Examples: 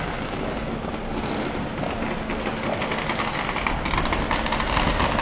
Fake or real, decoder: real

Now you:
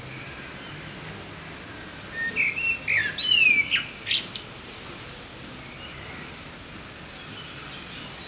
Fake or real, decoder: real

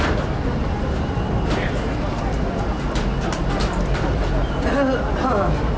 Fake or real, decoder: real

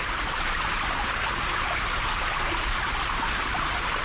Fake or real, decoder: real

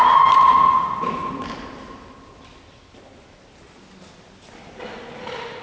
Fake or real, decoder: real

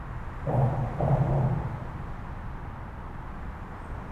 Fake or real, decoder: fake, vocoder, BigVGAN v2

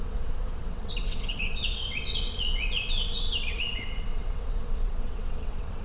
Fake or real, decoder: fake, vocoder, WaveNeXt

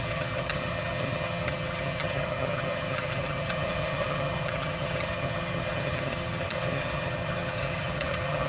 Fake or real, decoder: fake, vocoder, HiFi-GAN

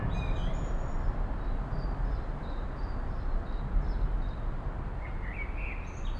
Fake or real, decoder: real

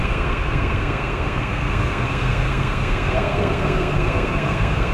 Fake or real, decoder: fake, codec, SNAC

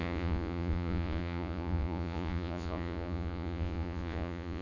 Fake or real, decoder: fake, vocoder, Vocos